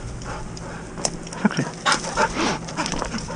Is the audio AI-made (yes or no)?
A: no